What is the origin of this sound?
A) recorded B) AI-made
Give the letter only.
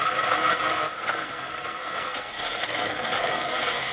B